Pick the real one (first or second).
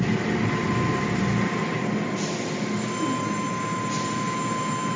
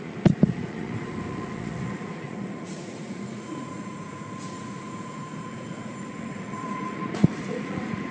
first